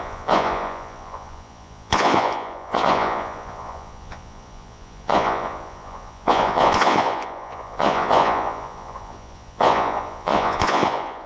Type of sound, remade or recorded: remade